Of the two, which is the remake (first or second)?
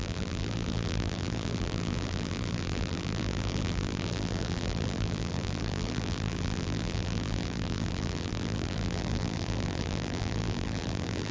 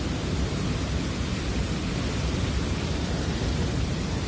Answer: first